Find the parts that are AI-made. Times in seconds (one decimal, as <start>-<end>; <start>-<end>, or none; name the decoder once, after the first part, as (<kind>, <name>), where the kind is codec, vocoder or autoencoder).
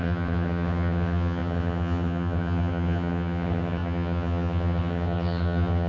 0.0-5.9 (vocoder, HiFi-GAN)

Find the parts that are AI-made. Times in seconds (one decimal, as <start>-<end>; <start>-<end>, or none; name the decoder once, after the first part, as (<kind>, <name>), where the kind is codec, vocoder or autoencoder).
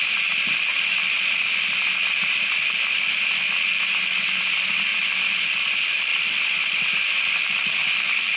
none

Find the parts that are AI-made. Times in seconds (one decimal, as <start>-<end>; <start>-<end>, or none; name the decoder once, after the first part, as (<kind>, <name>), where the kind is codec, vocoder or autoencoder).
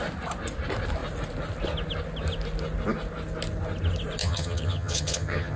4.2-5.6 (vocoder, HiFi-GAN)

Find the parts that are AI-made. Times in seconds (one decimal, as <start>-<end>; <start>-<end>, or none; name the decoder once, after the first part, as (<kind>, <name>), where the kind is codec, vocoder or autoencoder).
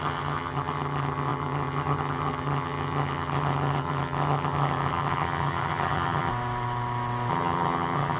0.0-6.3 (vocoder, HiFi-GAN); 7.3-8.2